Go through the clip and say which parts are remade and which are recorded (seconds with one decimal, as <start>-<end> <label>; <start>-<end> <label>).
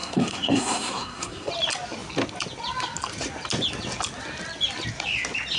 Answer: 0.0-1.5 remade; 1.5-5.6 recorded